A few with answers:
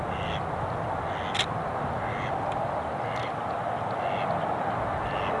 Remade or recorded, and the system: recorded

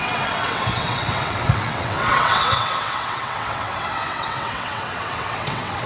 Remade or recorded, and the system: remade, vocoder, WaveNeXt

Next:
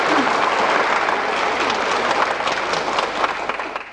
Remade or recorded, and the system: recorded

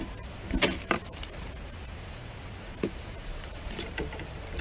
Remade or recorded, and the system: remade, vocoder, BigVGAN v2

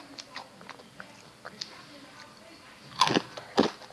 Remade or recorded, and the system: recorded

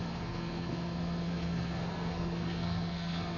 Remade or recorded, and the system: remade, codec, SNAC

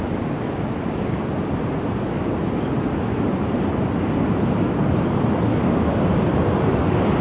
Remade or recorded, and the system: recorded